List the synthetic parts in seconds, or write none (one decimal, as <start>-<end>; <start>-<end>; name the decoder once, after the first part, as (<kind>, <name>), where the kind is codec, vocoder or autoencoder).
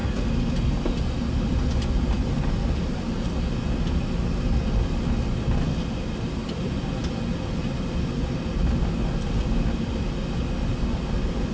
none